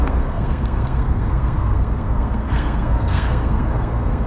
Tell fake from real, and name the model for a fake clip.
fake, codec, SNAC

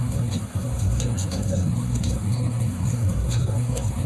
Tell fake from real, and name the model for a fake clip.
fake, codec, SNAC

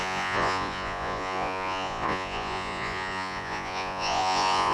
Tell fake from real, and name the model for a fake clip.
fake, vocoder, Vocos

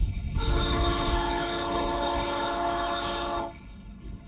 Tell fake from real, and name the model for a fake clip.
fake, codec, HILCodec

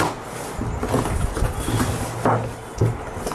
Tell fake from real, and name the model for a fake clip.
real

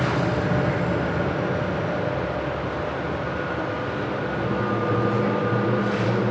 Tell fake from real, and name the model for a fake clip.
real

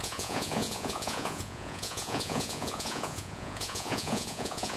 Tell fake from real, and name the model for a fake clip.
fake, vocoder, Vocos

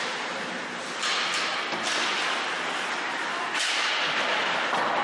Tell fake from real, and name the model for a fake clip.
real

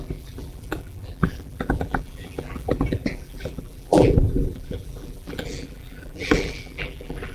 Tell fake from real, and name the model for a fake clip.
fake, vocoder, BigVGAN v2